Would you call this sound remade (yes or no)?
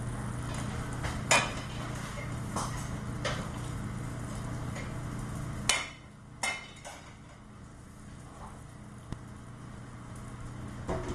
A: no